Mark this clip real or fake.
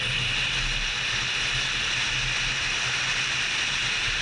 real